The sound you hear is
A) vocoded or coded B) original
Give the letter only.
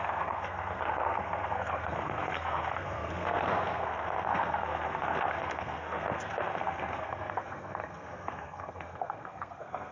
A